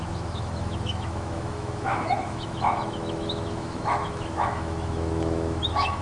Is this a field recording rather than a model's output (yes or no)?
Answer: no